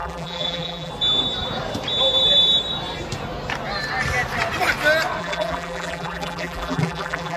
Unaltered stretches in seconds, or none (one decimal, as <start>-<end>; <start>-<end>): 0.9-5.2

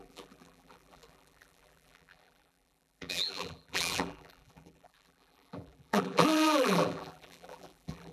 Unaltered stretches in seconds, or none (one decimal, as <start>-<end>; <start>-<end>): none

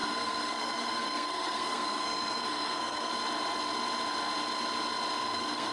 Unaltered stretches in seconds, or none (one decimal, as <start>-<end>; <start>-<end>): 3.1-5.2

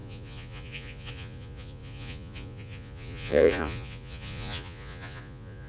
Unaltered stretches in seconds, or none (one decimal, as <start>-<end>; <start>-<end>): none

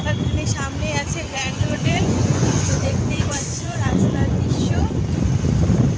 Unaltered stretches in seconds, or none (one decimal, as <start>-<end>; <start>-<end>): 0.0-1.3; 4.9-6.0

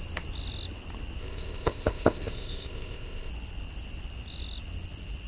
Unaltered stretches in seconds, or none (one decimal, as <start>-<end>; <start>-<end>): 0.0-1.2; 3.3-5.3

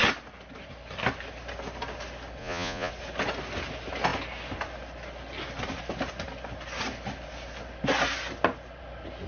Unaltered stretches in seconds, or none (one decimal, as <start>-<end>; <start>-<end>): 0.0-2.4; 2.9-9.3

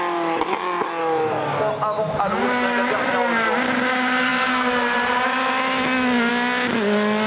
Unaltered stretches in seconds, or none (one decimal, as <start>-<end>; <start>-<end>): 0.0-7.3